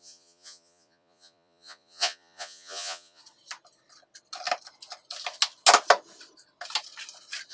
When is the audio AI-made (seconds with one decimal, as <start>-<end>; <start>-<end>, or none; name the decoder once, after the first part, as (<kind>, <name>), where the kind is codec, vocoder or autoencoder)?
0.0-3.2 (vocoder, Vocos)